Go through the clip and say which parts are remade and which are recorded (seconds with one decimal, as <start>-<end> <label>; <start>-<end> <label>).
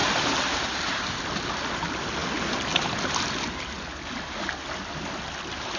0.0-1.2 remade; 1.2-5.8 recorded